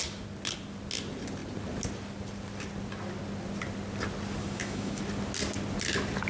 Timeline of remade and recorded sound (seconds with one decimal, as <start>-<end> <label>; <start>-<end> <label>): 0.0-4.4 recorded; 4.4-5.0 remade; 5.0-6.3 recorded